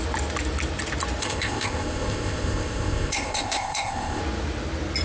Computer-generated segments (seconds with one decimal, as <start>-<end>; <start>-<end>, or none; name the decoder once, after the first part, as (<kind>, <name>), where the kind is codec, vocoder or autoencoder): 1.2-4.2 (codec, ZipCodec)